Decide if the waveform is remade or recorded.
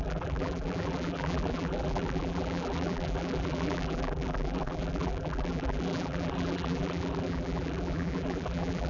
remade